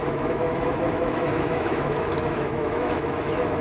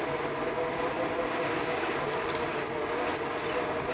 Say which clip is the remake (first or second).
first